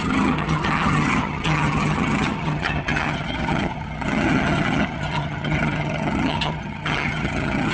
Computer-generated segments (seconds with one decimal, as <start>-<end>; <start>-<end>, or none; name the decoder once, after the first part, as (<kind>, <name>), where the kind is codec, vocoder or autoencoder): 0.0-7.7 (vocoder, HiFi-GAN)